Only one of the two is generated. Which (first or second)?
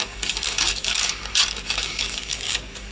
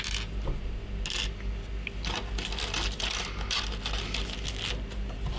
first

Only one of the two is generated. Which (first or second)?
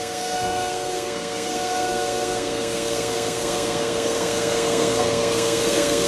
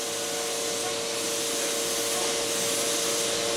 first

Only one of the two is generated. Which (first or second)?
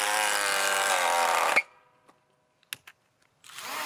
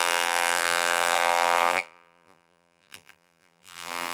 second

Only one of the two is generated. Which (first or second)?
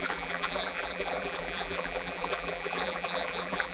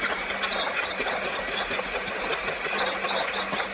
first